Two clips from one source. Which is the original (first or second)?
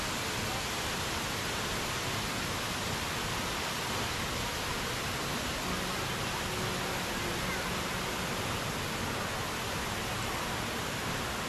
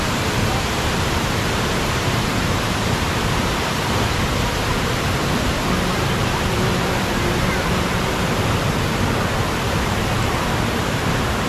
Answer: first